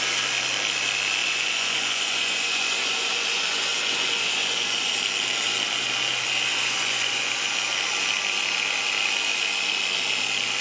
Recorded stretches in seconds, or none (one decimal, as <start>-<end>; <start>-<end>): 0.0-1.2; 4.9-6.5; 7.3-10.6